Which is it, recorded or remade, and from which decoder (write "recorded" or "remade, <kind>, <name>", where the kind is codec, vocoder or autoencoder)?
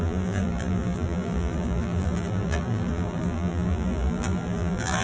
remade, vocoder, BigVGAN v2